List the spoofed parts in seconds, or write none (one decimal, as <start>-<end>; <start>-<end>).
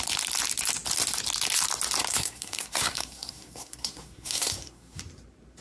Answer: 2.1-5.0